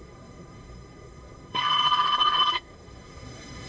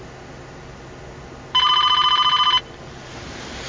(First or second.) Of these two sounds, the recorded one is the second